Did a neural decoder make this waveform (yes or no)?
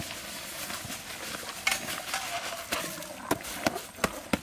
no